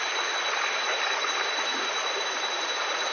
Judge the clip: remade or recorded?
recorded